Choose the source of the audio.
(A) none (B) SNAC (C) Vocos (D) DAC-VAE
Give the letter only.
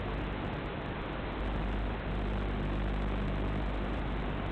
A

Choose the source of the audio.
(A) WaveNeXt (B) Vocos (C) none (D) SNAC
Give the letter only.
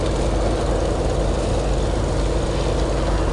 C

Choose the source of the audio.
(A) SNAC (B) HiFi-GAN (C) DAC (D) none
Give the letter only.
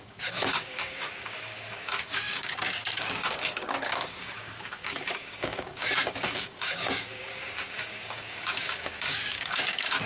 C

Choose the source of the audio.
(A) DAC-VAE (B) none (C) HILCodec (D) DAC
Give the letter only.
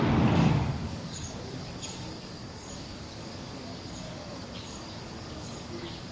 D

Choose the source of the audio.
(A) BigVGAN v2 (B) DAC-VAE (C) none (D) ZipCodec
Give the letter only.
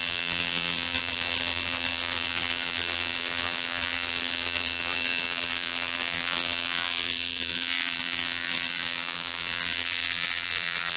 A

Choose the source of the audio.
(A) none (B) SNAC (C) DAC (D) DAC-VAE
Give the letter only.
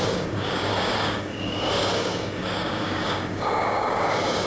C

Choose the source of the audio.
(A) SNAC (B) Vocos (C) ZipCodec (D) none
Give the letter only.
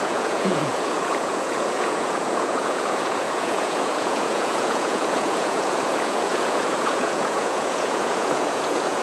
B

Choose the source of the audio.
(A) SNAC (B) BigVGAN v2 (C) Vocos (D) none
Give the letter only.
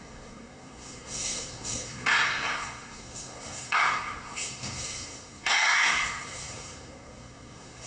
A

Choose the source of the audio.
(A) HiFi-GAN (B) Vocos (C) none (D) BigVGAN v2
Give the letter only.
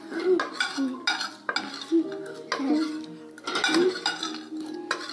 C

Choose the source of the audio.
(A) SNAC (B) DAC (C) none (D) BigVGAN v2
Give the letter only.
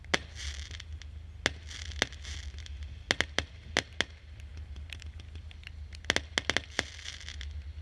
C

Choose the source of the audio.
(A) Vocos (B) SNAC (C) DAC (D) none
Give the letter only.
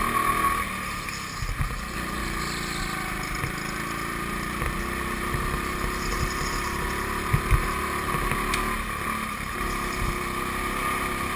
D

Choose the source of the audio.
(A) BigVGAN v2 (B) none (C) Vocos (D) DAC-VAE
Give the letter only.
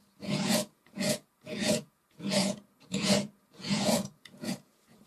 C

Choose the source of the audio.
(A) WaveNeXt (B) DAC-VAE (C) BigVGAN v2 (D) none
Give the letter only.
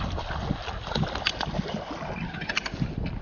D